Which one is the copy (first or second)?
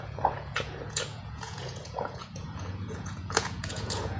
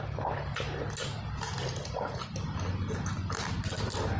first